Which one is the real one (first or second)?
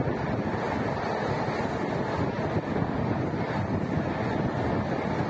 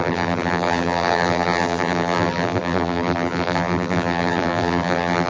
first